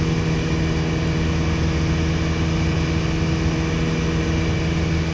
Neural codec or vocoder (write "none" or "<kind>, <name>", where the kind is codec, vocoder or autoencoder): none